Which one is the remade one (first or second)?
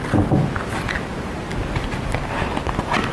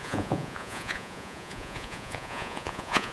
second